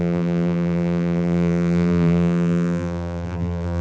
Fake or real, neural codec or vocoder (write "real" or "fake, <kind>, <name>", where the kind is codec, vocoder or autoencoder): fake, vocoder, BigVGAN v2